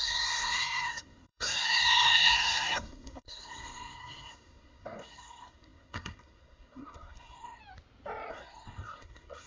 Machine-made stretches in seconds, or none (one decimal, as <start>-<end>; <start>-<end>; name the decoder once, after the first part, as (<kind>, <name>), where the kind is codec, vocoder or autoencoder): 0.0-7.6 (codec, SNAC); 8.3-9.5